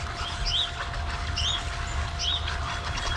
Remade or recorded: recorded